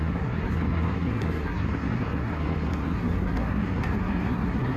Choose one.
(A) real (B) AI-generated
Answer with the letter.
B